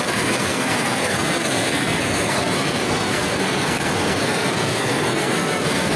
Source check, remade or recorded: remade